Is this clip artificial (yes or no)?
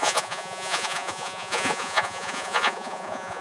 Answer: yes